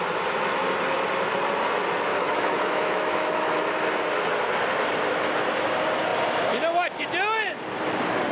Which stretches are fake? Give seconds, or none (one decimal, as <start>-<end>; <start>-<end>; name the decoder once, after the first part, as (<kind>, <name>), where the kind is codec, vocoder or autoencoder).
2.1-3.6 (autoencoder, DAC-VAE)